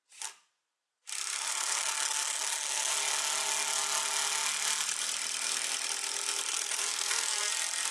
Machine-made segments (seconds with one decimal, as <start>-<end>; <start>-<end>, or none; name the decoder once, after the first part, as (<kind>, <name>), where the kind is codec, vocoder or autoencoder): 1.5-2.9 (codec, SNAC); 6.5-7.5